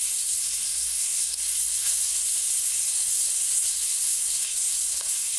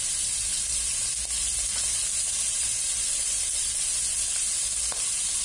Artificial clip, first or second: first